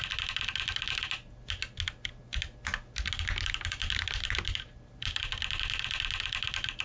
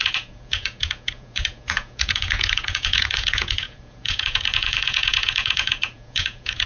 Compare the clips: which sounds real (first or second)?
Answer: first